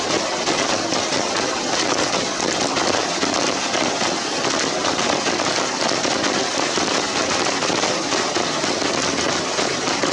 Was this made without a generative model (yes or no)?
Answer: yes